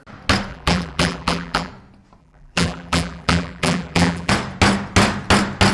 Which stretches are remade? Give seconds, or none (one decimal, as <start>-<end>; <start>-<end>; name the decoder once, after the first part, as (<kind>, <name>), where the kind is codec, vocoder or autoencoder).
0.5-1.7 (vocoder, BigVGAN v2); 2.2-4.3